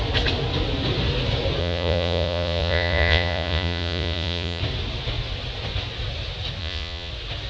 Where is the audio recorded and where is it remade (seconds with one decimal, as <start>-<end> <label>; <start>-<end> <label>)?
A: 0.0-1.6 recorded; 1.6-4.6 remade; 4.6-6.6 recorded; 6.6-7.1 remade; 7.1-7.5 recorded